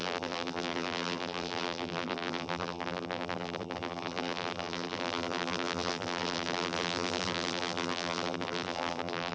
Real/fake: fake